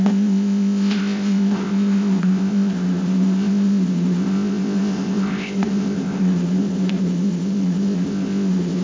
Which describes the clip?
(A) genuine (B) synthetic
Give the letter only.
B